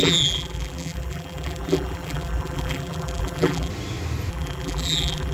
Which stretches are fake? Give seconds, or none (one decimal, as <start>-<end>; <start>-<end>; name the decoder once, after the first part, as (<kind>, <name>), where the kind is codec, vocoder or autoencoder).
0.0-3.7 (vocoder, BigVGAN v2); 4.3-5.3